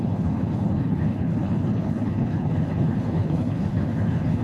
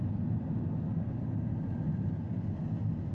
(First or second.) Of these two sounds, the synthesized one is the first